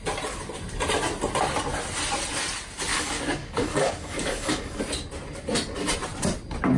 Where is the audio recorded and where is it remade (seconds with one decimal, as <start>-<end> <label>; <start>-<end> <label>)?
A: 0.0-2.9 recorded; 2.9-4.8 remade; 4.8-6.8 recorded